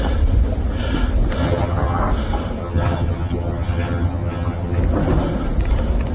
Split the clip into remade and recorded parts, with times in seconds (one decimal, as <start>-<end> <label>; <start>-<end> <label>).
0.0-1.4 recorded; 1.4-2.0 remade; 2.0-2.6 recorded; 2.6-4.8 remade; 4.8-6.1 recorded